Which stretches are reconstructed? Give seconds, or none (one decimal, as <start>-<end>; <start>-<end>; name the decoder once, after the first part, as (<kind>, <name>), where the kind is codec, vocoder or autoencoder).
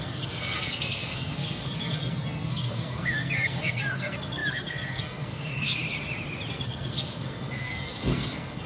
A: 0.0-5.8 (codec, SNAC); 6.5-8.7